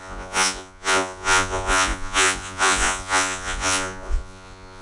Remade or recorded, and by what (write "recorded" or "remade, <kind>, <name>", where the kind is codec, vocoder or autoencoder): remade, vocoder, Vocos